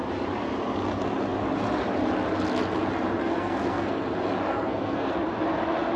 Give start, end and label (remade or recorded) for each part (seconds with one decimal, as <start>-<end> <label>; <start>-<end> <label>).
0.0-3.2 recorded; 3.2-4.0 remade; 4.0-4.5 recorded; 4.5-5.1 remade; 5.1-6.0 recorded